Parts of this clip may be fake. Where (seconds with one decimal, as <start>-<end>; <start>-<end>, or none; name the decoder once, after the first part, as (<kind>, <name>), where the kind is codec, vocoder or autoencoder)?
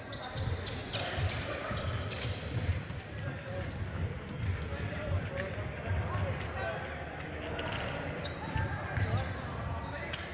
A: 0.8-5.7 (vocoder, BigVGAN v2)